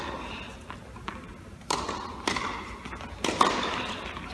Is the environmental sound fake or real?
real